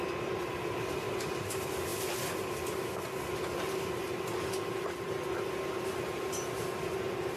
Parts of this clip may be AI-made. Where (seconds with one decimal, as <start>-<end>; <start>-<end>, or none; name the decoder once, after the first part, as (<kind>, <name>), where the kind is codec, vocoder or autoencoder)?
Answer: none